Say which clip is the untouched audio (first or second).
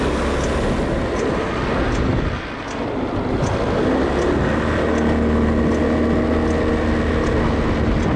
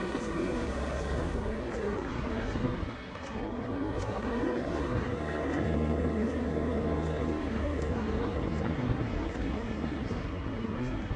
first